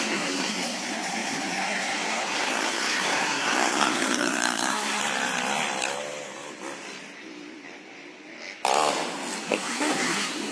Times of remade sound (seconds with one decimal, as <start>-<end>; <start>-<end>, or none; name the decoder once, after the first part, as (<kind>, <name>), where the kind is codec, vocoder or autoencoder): 0.0-5.0 (codec, SNAC); 9.4-10.5

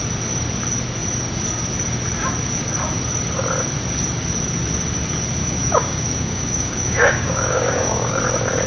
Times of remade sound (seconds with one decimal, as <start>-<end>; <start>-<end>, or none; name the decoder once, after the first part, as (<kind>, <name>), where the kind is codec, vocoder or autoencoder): 5.4-8.2 (codec, DAC)

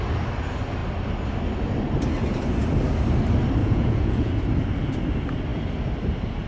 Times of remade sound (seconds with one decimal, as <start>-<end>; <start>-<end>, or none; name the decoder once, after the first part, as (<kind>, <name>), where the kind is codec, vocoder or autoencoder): 3.6-4.3 (vocoder, Vocos)